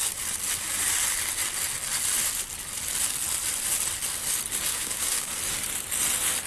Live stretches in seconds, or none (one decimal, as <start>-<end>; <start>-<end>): 0.0-4.7; 5.3-6.5